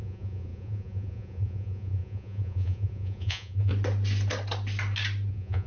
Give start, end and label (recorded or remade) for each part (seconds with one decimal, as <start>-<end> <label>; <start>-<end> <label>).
0.0-3.7 remade; 3.7-5.3 recorded; 5.3-5.7 remade